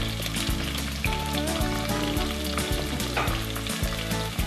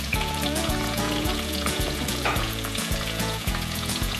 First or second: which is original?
first